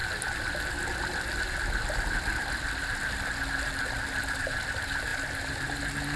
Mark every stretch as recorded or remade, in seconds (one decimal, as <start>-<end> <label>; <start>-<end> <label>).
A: 0.0-6.2 recorded